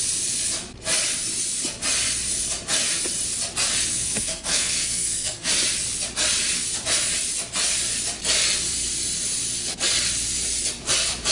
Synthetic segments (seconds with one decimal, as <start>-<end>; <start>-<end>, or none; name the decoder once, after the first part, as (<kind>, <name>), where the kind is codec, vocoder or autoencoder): 3.9-5.5 (codec, SNAC)